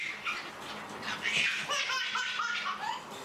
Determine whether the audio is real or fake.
real